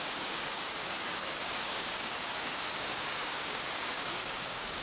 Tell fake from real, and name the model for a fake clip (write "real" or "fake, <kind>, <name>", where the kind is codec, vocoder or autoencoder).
fake, codec, DAC